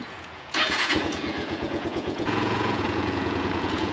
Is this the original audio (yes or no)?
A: no